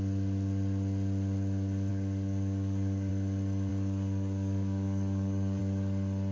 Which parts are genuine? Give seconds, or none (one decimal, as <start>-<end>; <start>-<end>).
0.0-1.9; 3.1-3.7; 5.6-6.3